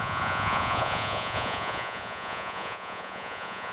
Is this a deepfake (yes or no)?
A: yes